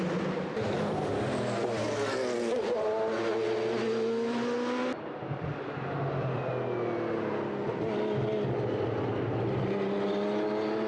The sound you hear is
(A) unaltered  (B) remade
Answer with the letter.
A